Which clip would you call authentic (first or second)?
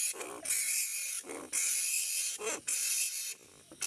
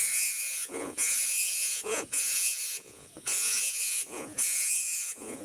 first